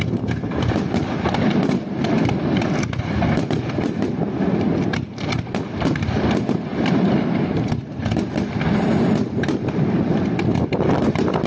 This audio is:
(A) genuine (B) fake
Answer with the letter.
B